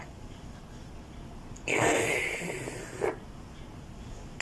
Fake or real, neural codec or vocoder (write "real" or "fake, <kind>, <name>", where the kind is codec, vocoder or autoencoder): real